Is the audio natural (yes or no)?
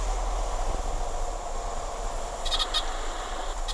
yes